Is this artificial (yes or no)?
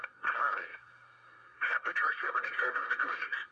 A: yes